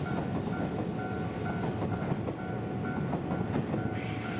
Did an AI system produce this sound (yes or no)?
no